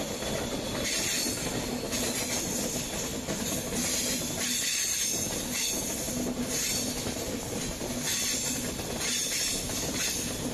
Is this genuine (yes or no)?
yes